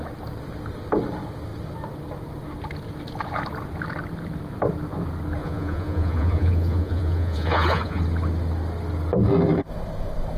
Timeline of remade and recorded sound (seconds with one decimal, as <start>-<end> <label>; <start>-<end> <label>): 0.0-5.4 recorded; 5.4-8.0 remade; 8.0-10.4 recorded